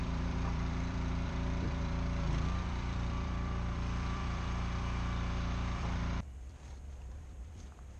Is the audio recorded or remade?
remade